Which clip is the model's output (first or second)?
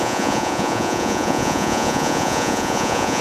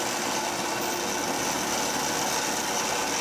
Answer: first